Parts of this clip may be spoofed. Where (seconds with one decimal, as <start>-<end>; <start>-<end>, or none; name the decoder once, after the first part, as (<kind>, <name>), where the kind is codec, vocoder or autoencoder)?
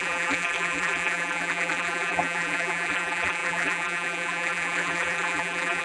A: 0.0-5.8 (vocoder, BigVGAN v2)